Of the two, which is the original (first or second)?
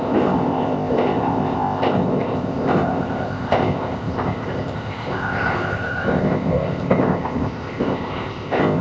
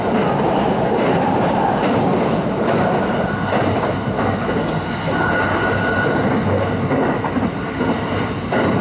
second